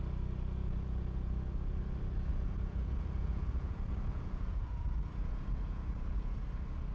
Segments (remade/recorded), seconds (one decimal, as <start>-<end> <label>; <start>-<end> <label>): 0.0-0.6 recorded; 0.6-1.7 remade; 1.7-2.3 recorded; 2.3-6.4 remade; 6.4-6.9 recorded